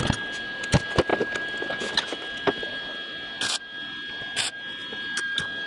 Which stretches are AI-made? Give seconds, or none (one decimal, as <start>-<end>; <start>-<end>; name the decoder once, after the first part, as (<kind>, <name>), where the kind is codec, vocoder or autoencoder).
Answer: none